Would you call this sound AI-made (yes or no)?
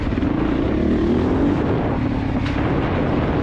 no